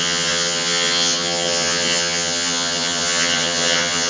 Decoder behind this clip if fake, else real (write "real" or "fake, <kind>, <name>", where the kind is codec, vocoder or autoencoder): fake, vocoder, HiFi-GAN